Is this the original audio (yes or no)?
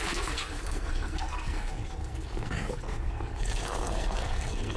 no